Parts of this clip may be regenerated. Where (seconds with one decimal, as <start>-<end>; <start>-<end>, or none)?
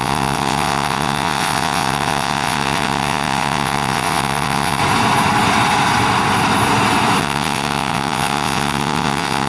0.0-4.8; 7.2-9.5